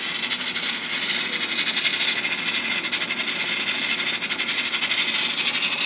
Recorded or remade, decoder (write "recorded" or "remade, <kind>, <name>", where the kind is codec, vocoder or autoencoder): recorded